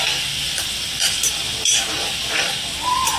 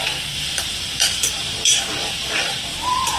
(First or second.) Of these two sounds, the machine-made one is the second